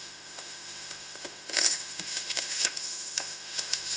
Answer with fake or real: fake